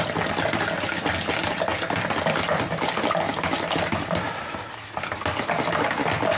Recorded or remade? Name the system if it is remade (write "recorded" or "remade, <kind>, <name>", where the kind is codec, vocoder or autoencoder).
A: recorded